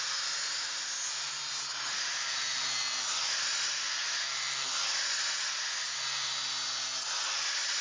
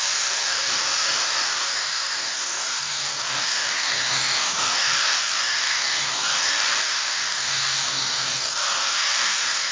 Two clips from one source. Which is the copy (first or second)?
second